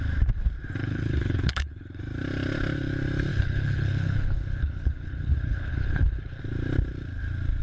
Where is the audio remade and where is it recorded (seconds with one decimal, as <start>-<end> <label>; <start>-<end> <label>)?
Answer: 0.0-0.8 recorded; 0.8-2.0 remade; 2.0-3.3 recorded; 3.3-6.4 remade; 6.4-7.6 recorded